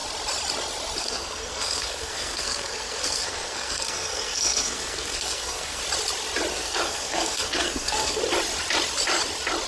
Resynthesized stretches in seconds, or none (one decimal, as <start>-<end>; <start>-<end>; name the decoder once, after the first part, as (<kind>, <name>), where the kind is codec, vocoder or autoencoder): 1.0-5.8 (codec, SNAC); 6.5-8.2